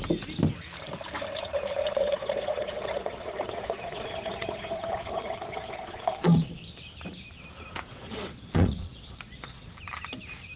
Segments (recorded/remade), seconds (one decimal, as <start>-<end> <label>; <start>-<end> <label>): 0.0-1.8 recorded; 1.8-6.6 remade; 6.6-7.9 recorded; 7.9-9.7 remade; 9.7-10.6 recorded